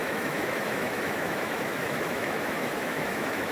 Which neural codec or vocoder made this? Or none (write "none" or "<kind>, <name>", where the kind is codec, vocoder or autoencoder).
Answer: autoencoder, DAC-VAE